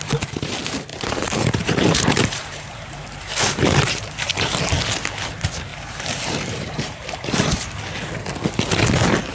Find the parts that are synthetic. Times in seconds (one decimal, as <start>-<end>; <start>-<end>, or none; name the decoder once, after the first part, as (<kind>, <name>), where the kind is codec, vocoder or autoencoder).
0.9-4.6 (vocoder, BigVGAN v2); 5.7-7.8